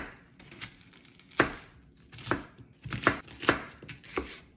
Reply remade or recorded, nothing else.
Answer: recorded